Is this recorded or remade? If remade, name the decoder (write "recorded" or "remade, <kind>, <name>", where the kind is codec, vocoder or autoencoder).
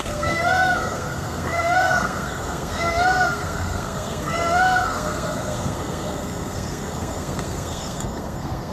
remade, codec, SNAC